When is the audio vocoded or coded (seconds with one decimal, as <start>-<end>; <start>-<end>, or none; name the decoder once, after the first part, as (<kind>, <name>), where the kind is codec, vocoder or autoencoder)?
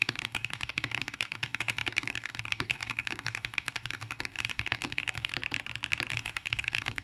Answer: 0.0-5.3 (codec, DAC); 6.1-7.0